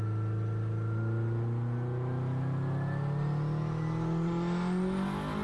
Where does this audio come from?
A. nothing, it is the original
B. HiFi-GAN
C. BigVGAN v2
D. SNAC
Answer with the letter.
A